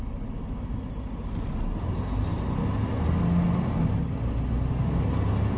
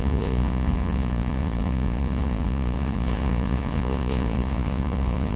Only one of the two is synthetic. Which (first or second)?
second